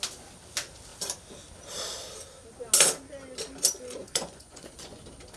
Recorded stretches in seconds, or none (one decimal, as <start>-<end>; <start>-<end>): 0.0-4.0; 5.0-5.4